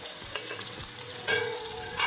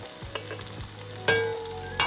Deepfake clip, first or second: first